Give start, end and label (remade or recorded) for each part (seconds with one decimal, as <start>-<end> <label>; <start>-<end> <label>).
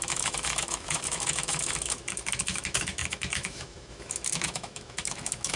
0.0-5.6 remade